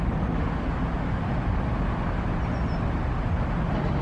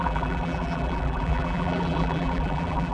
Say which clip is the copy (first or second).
second